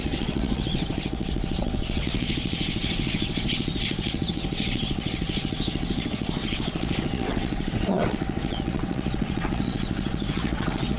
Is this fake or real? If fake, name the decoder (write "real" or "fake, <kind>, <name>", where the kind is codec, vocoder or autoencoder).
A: fake, vocoder, WaveNeXt